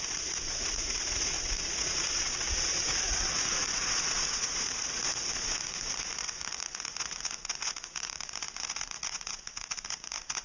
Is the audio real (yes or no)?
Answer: no